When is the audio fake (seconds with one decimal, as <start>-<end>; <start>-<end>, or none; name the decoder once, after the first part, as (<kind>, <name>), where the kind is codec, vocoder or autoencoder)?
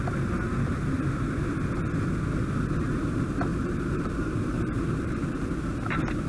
3.5-5.5 (vocoder, BigVGAN v2)